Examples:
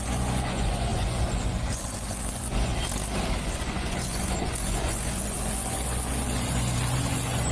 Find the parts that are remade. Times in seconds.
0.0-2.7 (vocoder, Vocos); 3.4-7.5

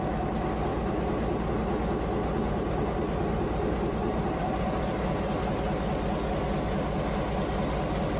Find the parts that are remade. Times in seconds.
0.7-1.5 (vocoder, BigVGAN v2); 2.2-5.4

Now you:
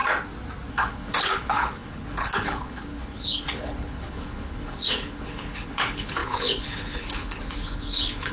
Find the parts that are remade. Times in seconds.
0.7-8.3 (codec, HILCodec)

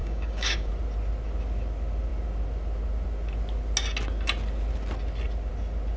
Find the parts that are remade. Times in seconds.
0.0-0.7 (codec, DAC)

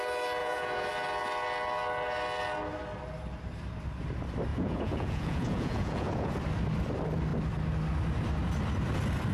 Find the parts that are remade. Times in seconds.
0.4-0.9 (vocoder, Vocos); 4.5-6.3

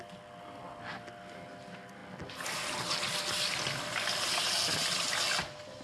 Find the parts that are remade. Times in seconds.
none

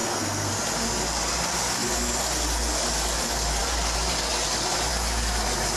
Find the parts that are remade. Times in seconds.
0.0-0.5 (codec, SNAC)

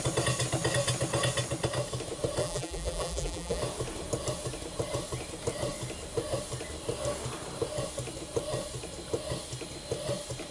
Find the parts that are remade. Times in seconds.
2.4-3.6 (vocoder, BigVGAN v2)